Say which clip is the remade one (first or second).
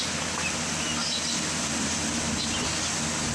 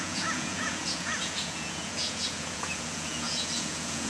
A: second